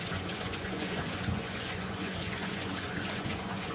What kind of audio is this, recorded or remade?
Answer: remade